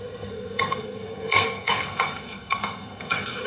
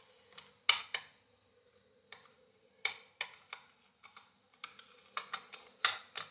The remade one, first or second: first